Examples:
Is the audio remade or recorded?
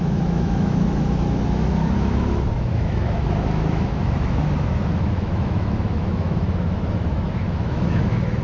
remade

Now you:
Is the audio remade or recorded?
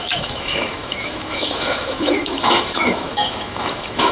remade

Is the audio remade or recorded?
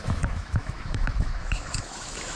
remade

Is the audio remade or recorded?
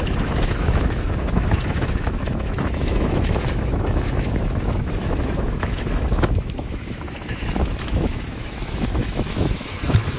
remade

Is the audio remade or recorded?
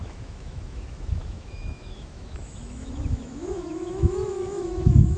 remade